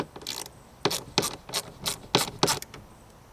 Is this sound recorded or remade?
recorded